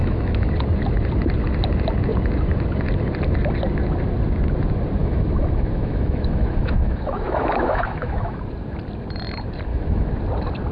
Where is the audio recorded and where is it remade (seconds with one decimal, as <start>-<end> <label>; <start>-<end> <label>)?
0.0-0.5 remade; 0.5-5.0 recorded; 5.0-8.4 remade; 8.4-9.7 recorded; 9.7-10.2 remade; 10.2-10.7 recorded